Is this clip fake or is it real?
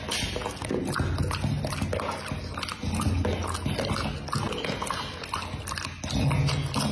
real